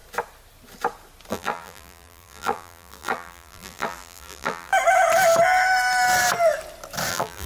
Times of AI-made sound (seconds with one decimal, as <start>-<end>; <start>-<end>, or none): 1.3-4.7; 7.1-7.5